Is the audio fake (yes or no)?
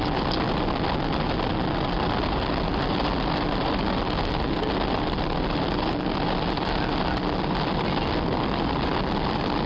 no